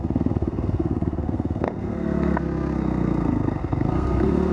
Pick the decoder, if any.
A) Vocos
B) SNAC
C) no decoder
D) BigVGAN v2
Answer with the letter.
B